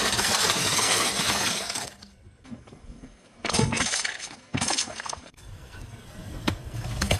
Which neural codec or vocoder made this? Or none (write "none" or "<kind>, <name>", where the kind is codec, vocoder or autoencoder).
codec, SNAC